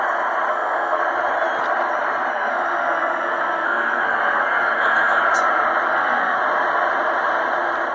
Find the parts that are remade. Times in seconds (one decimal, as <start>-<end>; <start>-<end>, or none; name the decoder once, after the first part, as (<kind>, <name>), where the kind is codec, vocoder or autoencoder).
0.5-1.0 (codec, SNAC); 2.3-5.2; 5.9-6.4